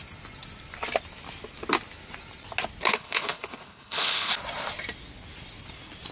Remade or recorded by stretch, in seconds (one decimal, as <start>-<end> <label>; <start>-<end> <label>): 0.0-2.9 recorded; 2.9-4.4 remade; 4.4-6.1 recorded